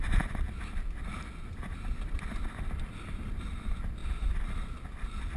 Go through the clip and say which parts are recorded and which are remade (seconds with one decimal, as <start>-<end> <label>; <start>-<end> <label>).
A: 0.0-5.4 recorded